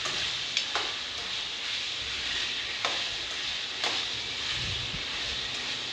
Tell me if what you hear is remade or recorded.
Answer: recorded